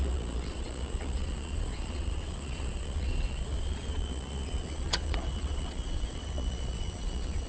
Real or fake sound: fake